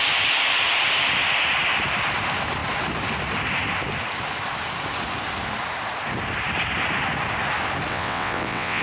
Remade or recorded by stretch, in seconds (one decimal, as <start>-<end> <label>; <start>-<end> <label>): 0.0-7.9 recorded; 7.9-8.8 remade

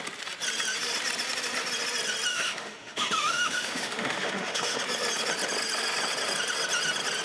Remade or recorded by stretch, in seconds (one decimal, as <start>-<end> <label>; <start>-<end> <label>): 0.0-2.3 recorded; 2.3-4.8 remade; 4.8-7.2 recorded

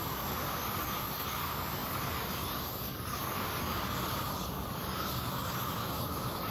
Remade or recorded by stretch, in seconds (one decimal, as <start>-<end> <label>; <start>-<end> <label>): 0.0-6.5 remade

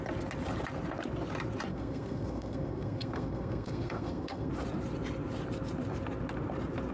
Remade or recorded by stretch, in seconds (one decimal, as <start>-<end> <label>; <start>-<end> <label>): 0.0-1.7 recorded; 1.7-4.5 remade; 4.5-6.9 recorded